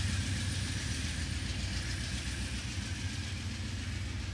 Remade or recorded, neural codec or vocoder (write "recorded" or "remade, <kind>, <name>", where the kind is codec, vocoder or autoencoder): recorded